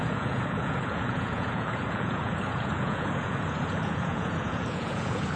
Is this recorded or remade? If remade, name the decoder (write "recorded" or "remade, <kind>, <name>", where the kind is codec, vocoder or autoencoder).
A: remade, vocoder, Vocos